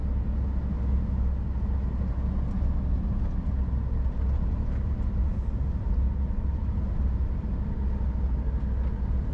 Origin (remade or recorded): recorded